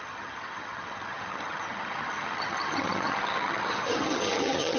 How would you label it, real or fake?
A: fake